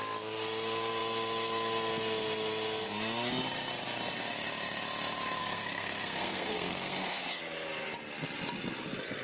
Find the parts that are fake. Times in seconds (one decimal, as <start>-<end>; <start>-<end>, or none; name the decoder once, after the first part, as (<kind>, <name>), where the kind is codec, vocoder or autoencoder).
5.4-7.4 (codec, SNAC)